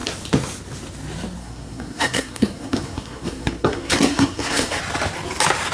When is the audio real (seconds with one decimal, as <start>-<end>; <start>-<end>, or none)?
0.0-1.4; 4.8-5.7

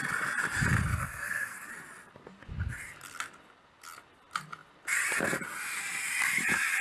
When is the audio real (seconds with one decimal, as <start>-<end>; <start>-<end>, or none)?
0.0-0.9; 1.7-6.8

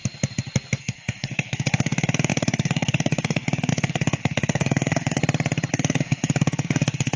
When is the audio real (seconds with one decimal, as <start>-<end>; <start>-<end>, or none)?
0.0-0.8; 5.2-5.7

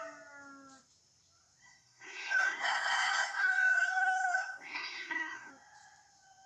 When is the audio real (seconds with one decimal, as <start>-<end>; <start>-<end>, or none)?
0.0-1.6; 5.5-6.5